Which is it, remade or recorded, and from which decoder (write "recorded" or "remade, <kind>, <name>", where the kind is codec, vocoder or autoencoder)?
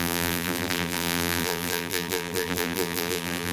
remade, vocoder, BigVGAN v2